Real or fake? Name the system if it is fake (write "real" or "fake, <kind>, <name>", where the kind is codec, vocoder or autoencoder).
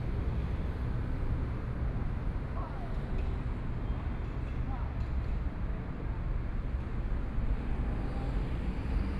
real